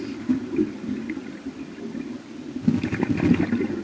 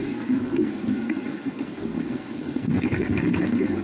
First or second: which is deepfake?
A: second